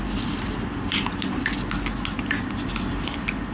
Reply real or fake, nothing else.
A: real